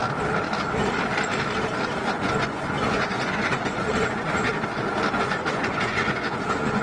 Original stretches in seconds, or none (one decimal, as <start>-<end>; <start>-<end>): 0.0-2.0; 4.5-5.1